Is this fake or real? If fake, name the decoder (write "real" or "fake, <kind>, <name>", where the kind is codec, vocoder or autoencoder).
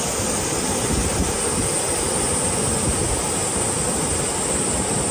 real